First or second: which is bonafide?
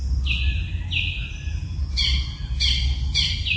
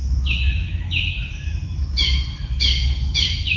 first